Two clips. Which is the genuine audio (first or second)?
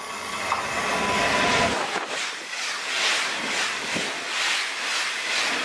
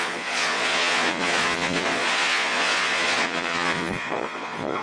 first